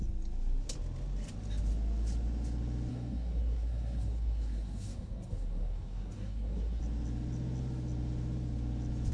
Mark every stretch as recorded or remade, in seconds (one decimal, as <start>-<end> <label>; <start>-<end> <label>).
0.0-2.9 recorded; 2.9-6.8 remade; 6.8-9.1 recorded